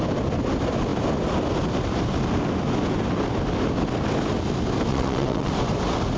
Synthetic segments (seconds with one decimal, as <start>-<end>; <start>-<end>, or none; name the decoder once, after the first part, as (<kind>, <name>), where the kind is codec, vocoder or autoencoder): 4.9-5.5 (vocoder, WaveNeXt)